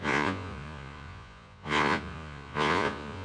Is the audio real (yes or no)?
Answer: no